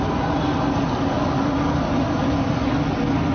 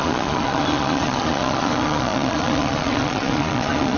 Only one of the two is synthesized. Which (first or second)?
second